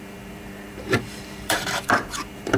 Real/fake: fake